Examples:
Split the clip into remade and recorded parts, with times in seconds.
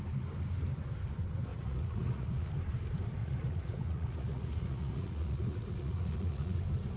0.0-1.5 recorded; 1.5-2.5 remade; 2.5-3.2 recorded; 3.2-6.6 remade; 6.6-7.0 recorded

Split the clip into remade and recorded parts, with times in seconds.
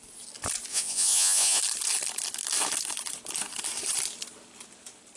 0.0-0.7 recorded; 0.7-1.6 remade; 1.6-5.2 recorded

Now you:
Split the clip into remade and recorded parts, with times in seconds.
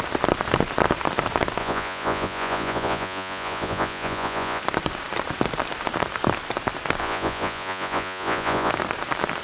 0.0-1.6 recorded; 1.6-4.6 remade; 4.6-7.0 recorded; 7.0-8.7 remade; 8.7-9.4 recorded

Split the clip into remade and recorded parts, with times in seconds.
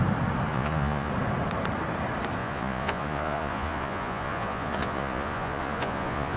0.0-0.5 recorded; 0.5-1.1 remade; 1.1-2.4 recorded; 2.4-6.4 remade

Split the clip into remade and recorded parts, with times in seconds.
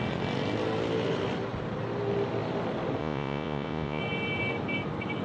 0.0-3.0 recorded; 3.0-4.0 remade; 4.0-5.2 recorded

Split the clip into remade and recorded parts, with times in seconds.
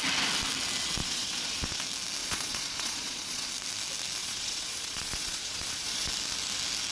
0.0-1.0 recorded; 1.0-1.8 remade; 1.8-2.2 recorded; 2.2-3.5 remade; 3.5-4.2 recorded; 4.2-6.1 remade; 6.1-6.9 recorded